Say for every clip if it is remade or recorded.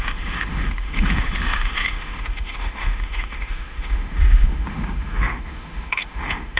remade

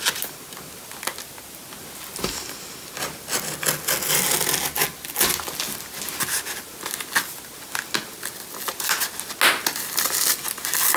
recorded